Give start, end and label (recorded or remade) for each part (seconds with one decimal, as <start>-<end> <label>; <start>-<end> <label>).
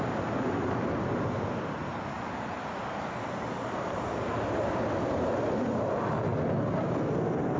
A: 0.0-7.6 recorded